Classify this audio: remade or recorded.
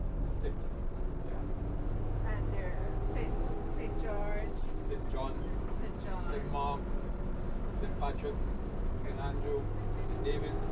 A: recorded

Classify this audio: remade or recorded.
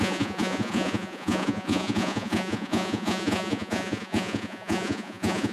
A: remade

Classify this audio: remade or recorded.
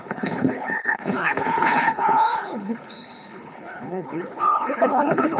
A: remade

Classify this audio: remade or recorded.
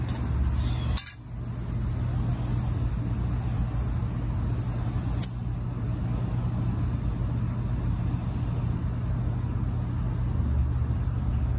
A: recorded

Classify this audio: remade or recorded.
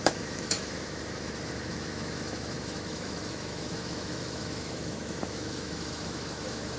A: remade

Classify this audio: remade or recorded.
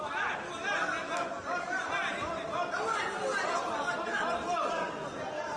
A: recorded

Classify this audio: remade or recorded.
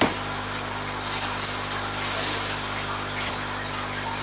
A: recorded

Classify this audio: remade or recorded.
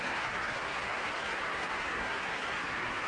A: remade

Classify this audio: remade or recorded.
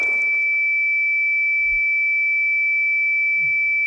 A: recorded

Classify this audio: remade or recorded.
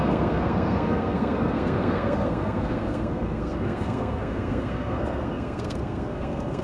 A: remade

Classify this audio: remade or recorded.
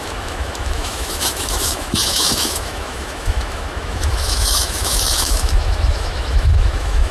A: remade